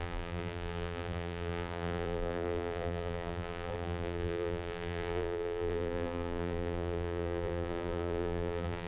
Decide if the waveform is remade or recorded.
remade